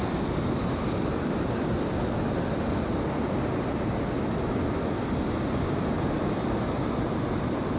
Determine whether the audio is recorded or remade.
recorded